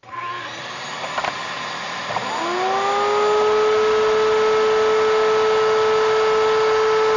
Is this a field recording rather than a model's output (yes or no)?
yes